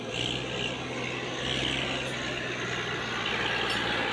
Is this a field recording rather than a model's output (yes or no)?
yes